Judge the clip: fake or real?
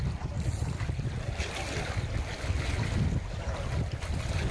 real